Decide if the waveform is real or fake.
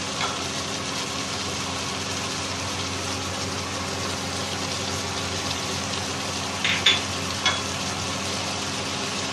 real